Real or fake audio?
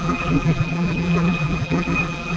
fake